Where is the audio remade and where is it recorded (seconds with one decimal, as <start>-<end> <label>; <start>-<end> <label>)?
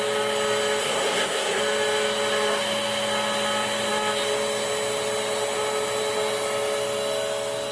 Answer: 0.0-0.8 recorded; 0.8-1.6 remade; 1.6-7.7 recorded